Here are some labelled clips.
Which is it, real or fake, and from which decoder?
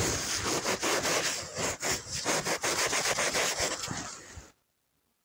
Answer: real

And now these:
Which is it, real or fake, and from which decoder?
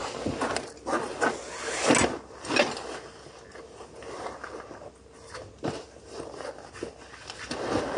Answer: real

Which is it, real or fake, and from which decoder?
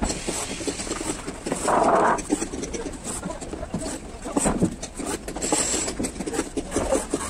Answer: real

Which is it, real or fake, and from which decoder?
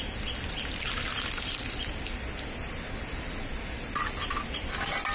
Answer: real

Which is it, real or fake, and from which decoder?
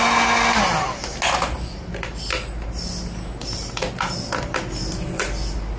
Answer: real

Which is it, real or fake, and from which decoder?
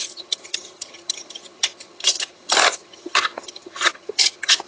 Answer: fake, vocoder, HiFi-GAN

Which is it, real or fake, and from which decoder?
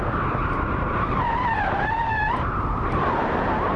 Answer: real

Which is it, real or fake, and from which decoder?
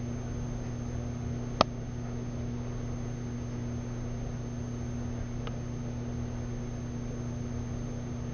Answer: real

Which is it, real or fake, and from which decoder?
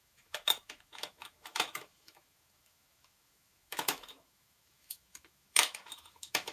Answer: fake, autoencoder, DAC-VAE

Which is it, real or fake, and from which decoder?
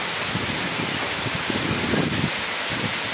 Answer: real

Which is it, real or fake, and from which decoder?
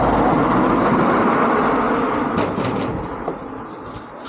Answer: real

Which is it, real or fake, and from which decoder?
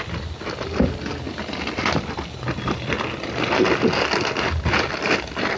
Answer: real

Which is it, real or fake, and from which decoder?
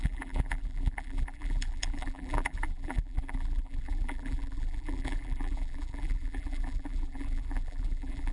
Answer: fake, vocoder, BigVGAN v2